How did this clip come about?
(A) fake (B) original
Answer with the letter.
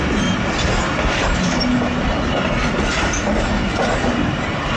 B